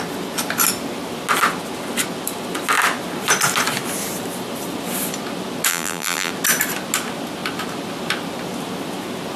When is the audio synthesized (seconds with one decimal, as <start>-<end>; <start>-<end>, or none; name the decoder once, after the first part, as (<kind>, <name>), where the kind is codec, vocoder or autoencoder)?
5.7-6.3 (vocoder, BigVGAN v2)